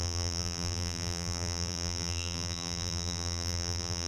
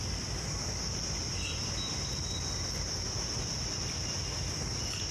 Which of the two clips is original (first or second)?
second